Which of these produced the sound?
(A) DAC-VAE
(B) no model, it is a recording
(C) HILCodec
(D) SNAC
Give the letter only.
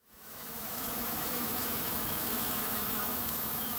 A